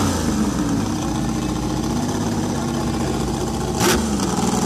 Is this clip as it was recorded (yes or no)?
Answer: yes